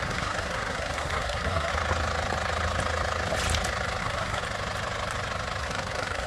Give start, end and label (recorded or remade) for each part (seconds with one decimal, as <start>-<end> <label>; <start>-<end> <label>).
0.0-1.7 remade; 1.7-4.0 recorded; 4.0-4.4 remade; 4.4-5.6 recorded; 5.6-6.3 remade